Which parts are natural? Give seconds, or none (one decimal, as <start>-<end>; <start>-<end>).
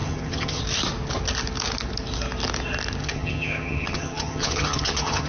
0.6-3.0